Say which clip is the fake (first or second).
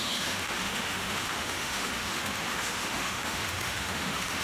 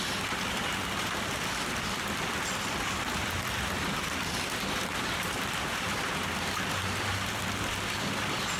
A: first